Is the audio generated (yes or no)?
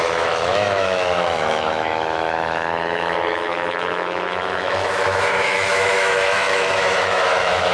yes